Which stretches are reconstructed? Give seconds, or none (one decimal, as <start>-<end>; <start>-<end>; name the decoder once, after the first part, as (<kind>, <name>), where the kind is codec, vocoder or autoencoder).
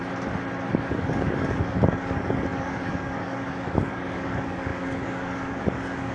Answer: 0.7-6.1 (codec, DAC)